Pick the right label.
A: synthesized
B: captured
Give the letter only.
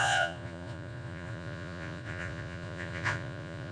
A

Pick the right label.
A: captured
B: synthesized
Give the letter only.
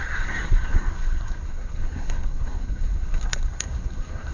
B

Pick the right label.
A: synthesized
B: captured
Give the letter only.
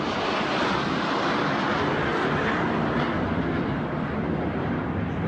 B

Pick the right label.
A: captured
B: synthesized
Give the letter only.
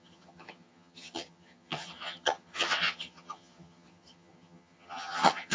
B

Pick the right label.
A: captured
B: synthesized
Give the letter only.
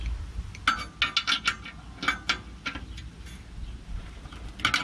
A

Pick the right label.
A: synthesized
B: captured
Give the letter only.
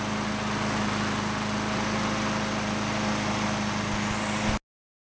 B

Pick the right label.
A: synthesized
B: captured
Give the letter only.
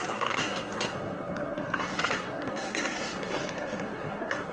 A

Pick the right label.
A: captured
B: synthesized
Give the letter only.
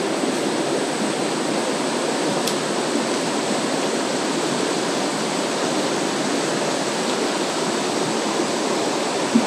A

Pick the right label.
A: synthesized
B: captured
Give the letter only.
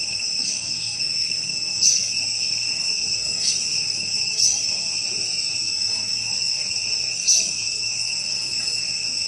A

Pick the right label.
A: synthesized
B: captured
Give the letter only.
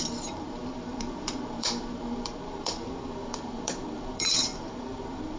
A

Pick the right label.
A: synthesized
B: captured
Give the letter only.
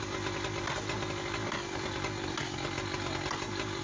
B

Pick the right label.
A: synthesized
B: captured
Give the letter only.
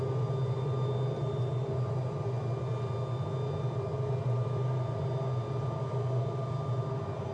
B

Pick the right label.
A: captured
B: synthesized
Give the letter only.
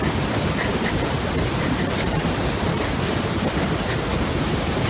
A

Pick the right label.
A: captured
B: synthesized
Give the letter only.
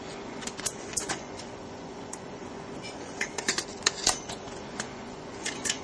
B